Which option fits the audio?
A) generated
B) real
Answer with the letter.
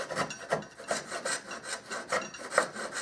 B